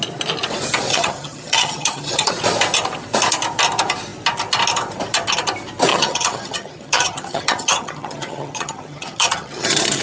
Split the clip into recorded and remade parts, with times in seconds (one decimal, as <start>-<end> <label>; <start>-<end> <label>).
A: 0.0-0.9 recorded; 0.9-2.3 remade; 2.3-5.9 recorded; 5.9-10.0 remade